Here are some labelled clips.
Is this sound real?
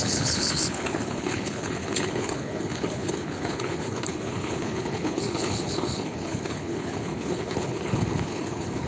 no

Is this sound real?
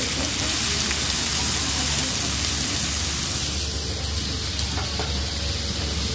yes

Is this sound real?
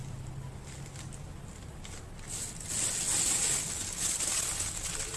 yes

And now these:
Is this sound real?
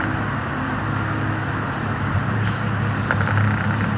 yes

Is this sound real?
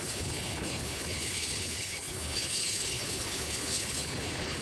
no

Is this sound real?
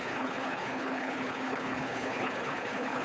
no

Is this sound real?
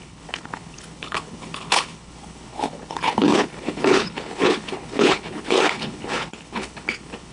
no